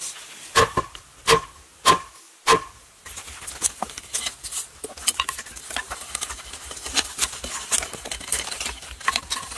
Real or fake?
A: real